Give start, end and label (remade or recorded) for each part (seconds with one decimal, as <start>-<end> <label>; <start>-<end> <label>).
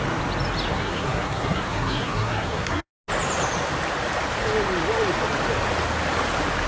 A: 0.0-0.7 recorded; 0.7-2.9 remade; 2.9-6.7 recorded